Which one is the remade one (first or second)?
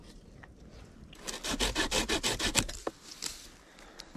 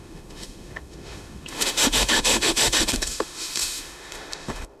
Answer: second